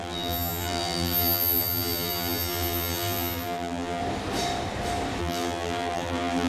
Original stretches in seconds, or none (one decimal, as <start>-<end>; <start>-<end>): 4.0-5.2

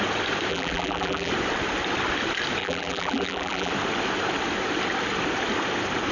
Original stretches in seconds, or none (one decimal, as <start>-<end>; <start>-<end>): 0.0-0.5; 1.3-2.6; 3.7-6.1